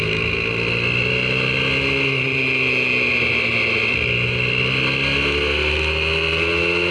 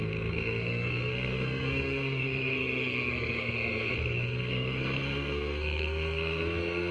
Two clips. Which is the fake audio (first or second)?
second